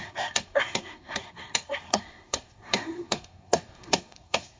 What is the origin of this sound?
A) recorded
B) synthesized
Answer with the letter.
B